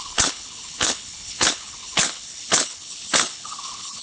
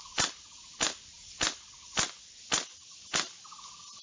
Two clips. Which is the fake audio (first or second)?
first